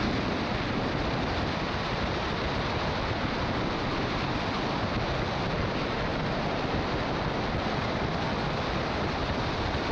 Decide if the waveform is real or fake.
real